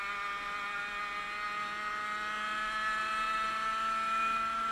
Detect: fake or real real